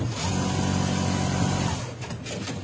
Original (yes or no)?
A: yes